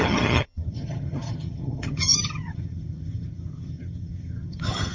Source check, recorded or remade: remade